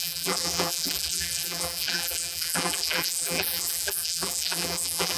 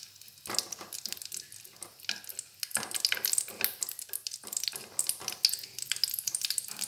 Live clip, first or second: second